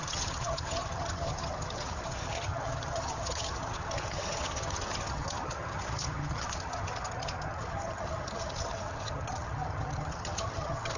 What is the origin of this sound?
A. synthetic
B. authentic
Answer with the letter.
A